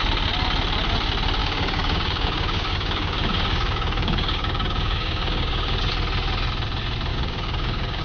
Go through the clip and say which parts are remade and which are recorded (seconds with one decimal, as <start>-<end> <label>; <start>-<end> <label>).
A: 0.0-1.4 recorded; 1.4-5.9 remade; 5.9-7.1 recorded; 7.1-8.0 remade